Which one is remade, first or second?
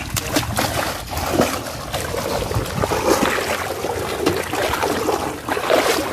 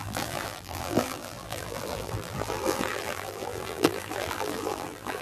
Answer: second